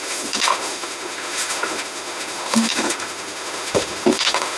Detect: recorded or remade remade